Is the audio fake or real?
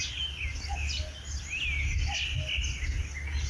real